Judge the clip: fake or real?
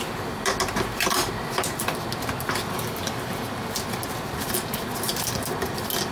real